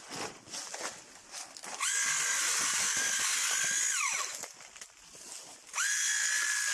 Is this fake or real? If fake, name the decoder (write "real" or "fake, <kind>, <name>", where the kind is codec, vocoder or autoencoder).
real